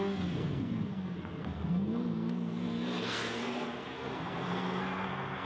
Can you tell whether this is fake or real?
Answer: fake